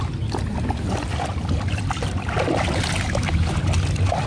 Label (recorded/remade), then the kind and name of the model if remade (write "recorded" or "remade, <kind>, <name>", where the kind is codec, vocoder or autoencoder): recorded